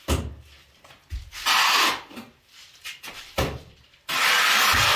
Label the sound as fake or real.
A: real